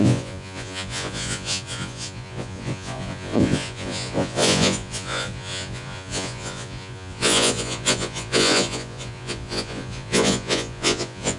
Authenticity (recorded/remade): remade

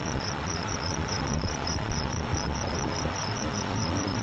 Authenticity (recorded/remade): remade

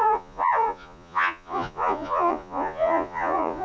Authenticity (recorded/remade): remade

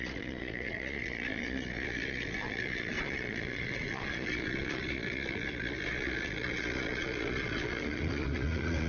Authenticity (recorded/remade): remade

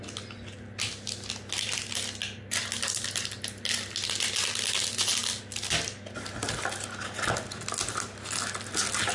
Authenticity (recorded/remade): recorded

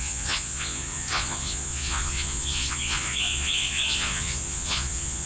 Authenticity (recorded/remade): remade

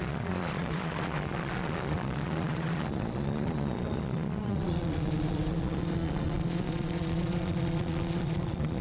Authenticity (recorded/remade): remade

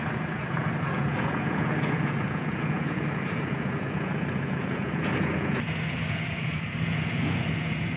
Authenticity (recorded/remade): remade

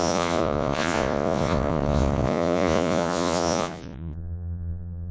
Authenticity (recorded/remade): remade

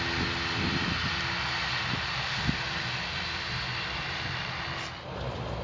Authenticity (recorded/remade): recorded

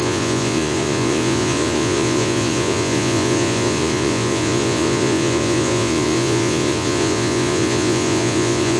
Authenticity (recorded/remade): remade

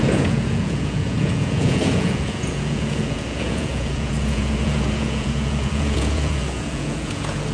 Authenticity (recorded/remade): remade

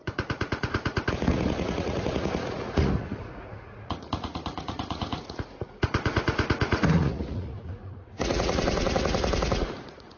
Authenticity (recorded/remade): remade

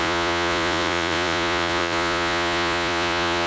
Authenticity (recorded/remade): remade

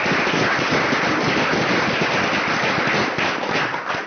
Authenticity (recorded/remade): recorded